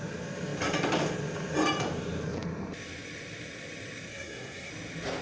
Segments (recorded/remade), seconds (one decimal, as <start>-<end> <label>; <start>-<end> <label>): 0.0-4.1 recorded; 4.1-4.7 remade; 4.7-5.2 recorded